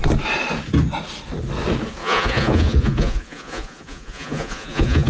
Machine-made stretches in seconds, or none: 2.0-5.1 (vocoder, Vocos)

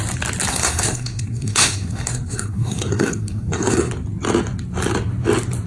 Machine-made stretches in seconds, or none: 0.5-3.9 (codec, SNAC)

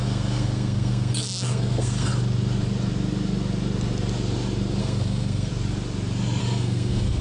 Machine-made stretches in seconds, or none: 0.0-2.1 (codec, SNAC); 4.8-5.5; 6.4-7.2

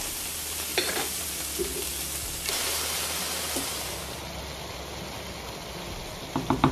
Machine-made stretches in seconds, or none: 0.7-1.4 (vocoder, BigVGAN v2)

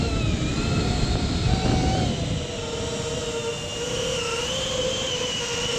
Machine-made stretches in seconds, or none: 3.7-4.4 (vocoder, BigVGAN v2)

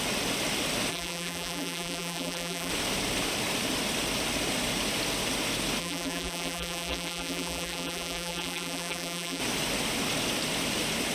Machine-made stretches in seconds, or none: 0.9-2.7 (vocoder, BigVGAN v2); 5.8-9.4

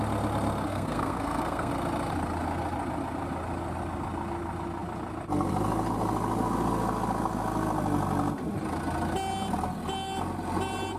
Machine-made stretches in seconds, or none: 0.7-1.7 (codec, SNAC)

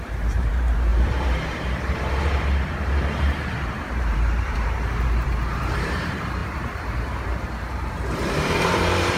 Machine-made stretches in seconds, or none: 0.0-9.2 (vocoder, BigVGAN v2)